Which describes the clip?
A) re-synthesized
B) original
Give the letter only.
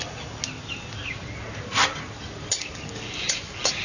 B